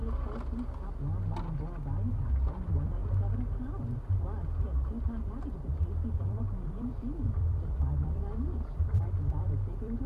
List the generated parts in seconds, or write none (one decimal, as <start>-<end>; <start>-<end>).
2.1-3.0; 6.2-10.1